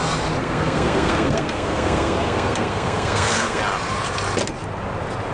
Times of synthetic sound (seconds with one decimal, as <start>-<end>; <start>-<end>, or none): 0.4-3.6